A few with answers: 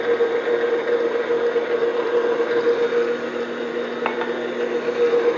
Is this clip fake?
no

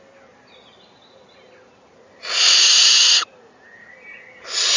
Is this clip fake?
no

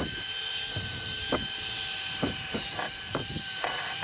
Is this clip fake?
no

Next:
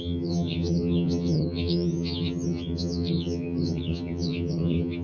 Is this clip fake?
yes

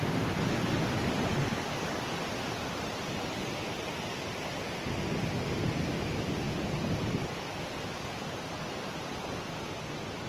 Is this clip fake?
no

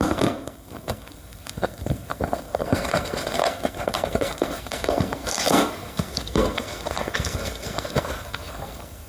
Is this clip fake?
yes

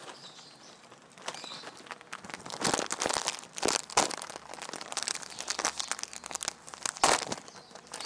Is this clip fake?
no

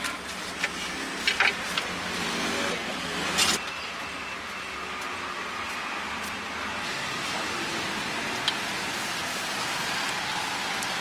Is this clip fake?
no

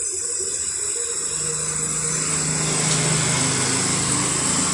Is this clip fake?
no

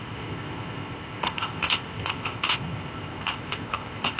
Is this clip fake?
yes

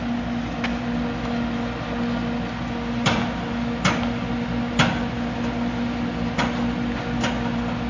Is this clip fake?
no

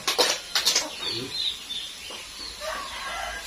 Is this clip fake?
no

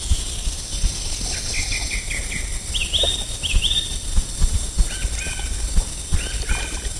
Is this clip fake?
no